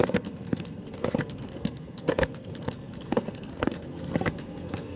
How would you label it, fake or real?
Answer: fake